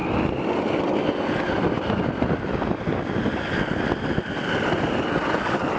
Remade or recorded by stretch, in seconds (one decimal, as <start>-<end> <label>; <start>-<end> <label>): 0.0-5.8 recorded